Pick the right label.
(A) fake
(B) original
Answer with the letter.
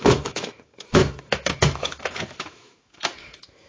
A